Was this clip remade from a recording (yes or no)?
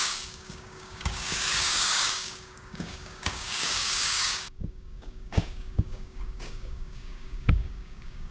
yes